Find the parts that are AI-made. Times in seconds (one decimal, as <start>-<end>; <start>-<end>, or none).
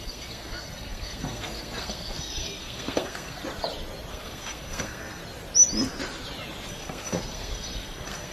0.0-3.4; 4.1-5.2; 6.7-8.3